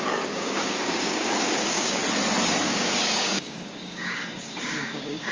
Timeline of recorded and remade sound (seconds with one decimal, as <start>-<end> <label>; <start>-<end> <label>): 0.0-2.0 remade; 2.0-2.6 recorded; 2.6-5.3 remade